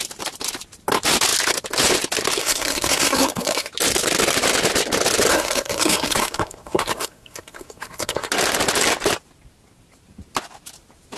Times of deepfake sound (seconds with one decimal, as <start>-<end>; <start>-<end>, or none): 2.4-3.7; 5.3-8.3